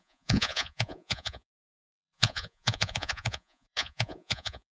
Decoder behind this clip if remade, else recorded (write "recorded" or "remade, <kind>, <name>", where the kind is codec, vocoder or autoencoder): remade, vocoder, Vocos